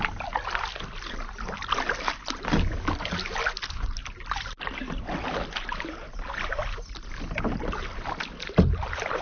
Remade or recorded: recorded